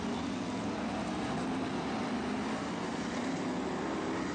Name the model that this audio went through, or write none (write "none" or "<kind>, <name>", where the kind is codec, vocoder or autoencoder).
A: none